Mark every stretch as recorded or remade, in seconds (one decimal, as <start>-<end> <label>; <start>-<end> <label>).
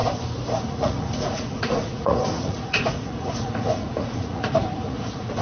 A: 0.0-0.6 recorded; 0.6-5.4 remade